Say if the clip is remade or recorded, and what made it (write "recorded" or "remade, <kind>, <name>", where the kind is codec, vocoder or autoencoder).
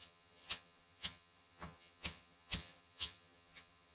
remade, vocoder, HiFi-GAN